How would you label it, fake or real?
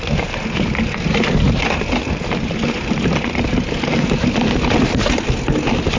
real